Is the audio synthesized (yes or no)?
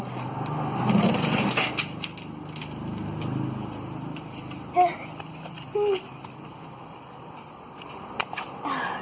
no